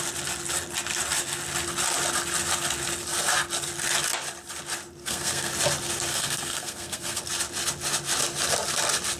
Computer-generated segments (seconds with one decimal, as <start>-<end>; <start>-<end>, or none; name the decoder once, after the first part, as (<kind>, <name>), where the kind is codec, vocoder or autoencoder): 5.0-5.5 (codec, SNAC); 6.1-7.2

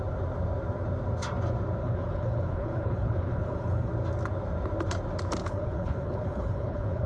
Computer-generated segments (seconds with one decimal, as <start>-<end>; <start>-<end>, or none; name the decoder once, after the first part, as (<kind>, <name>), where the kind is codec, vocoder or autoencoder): 1.8-3.9 (codec, HILCodec); 5.4-7.1

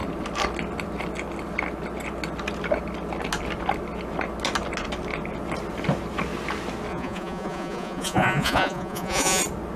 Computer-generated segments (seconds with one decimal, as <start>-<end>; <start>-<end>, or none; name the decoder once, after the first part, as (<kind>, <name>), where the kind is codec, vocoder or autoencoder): 6.9-9.4 (vocoder, Vocos)

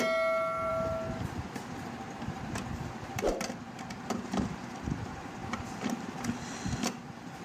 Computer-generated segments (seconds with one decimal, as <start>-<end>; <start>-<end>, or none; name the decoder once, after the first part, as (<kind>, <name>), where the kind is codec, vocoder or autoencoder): none

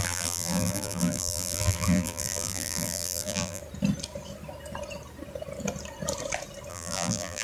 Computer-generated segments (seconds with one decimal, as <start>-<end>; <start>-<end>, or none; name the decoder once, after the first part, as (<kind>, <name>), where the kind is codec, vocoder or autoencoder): 0.0-3.6 (vocoder, BigVGAN v2); 6.7-7.4

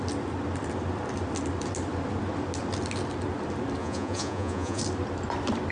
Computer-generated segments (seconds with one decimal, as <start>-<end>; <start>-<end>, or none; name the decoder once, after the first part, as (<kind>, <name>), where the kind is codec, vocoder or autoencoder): 3.8-4.8 (vocoder, Vocos)

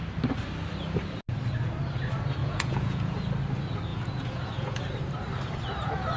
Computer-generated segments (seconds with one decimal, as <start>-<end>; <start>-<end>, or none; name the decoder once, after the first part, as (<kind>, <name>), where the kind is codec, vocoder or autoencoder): 2.4-3.2 (vocoder, Vocos); 3.9-4.8